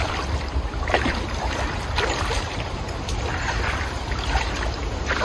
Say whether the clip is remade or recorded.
remade